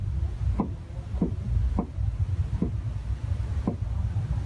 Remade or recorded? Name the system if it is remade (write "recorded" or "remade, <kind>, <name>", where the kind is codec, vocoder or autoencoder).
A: recorded